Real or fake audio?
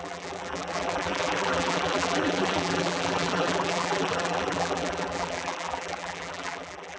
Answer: fake